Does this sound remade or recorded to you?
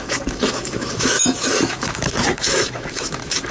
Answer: remade